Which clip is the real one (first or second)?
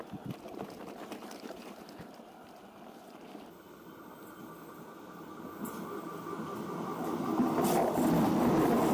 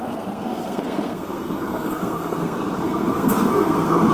first